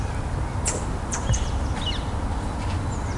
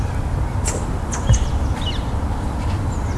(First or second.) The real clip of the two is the first